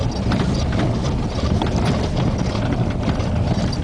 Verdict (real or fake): real